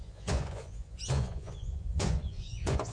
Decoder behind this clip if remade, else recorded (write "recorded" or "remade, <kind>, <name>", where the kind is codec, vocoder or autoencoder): remade, vocoder, Vocos